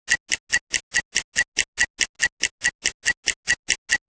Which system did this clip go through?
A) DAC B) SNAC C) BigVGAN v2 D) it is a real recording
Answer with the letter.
D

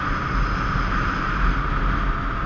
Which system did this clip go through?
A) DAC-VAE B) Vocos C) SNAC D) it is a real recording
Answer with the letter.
D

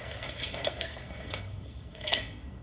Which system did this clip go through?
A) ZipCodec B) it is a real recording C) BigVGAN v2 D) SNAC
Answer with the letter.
D